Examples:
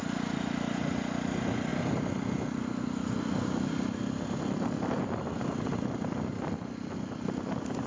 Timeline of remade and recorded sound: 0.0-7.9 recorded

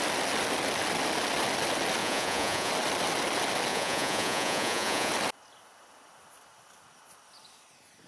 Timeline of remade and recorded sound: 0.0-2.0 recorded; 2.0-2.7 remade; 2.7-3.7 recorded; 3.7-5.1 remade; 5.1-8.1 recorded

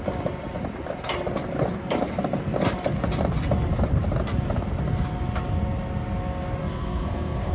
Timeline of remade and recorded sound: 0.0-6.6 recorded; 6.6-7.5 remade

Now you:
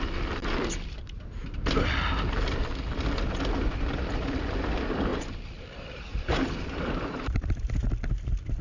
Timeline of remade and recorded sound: 0.0-5.1 recorded; 5.1-7.9 remade; 7.9-8.6 recorded

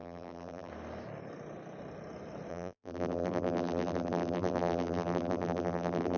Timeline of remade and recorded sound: 0.0-0.7 remade; 0.7-2.5 recorded; 2.5-6.2 remade

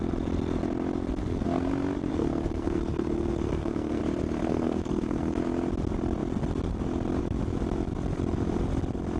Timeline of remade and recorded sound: 0.0-1.1 recorded; 1.1-1.7 remade; 1.7-2.1 recorded; 2.1-4.0 remade; 4.0-4.4 recorded; 4.4-5.4 remade; 5.4-9.2 recorded